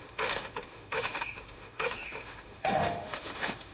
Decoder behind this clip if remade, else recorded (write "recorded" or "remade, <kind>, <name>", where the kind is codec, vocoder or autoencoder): remade, autoencoder, DAC-VAE